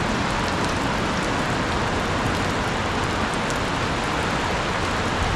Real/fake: real